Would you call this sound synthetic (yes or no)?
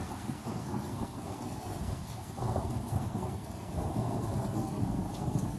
yes